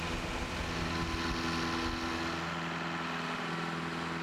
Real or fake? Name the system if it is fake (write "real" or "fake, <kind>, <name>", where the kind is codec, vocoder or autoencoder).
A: real